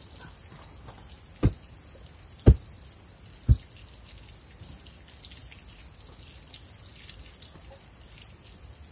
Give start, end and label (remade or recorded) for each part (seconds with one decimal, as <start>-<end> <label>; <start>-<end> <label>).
0.0-8.9 recorded